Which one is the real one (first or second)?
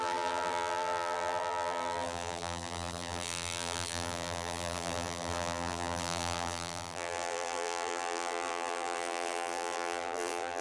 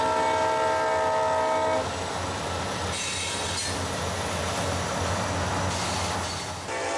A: second